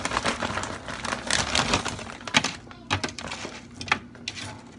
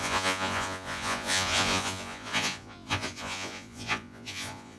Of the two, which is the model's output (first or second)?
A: second